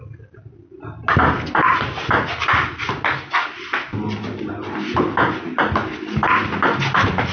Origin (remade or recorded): recorded